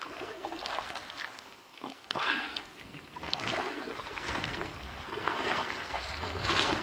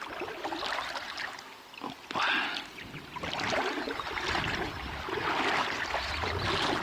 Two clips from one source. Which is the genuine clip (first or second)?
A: second